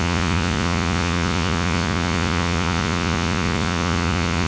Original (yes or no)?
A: no